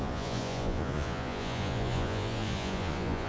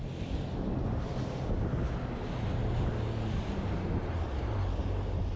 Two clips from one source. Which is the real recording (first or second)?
second